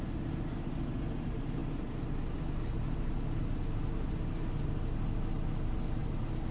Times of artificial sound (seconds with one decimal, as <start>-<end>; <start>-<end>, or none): none